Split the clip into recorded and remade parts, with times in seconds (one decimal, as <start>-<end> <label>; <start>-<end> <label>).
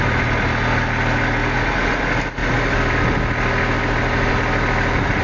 0.0-5.2 recorded